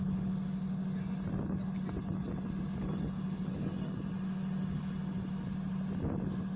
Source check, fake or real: real